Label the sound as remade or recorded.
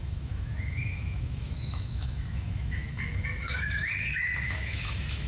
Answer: remade